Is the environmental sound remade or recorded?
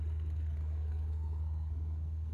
remade